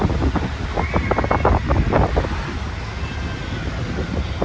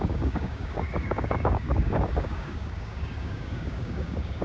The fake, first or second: second